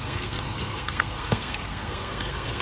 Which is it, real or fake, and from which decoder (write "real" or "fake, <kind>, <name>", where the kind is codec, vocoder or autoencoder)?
fake, codec, SNAC